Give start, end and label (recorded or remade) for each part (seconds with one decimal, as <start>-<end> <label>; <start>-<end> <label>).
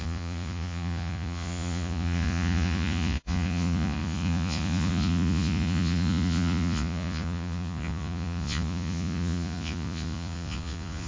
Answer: 0.0-11.1 remade